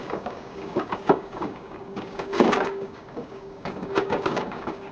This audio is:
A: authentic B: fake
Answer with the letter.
B